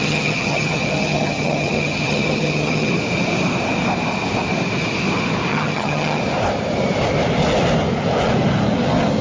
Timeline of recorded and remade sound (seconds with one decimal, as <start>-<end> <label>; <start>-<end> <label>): 0.0-2.9 remade; 2.9-5.5 recorded; 5.5-6.2 remade; 6.2-9.2 recorded